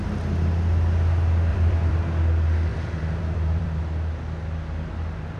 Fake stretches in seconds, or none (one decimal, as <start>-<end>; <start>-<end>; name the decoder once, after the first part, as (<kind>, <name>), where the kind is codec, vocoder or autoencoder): 1.5-2.0 (vocoder, BigVGAN v2); 2.7-3.8